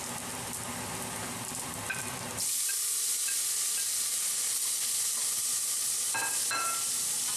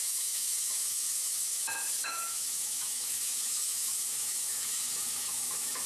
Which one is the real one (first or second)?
first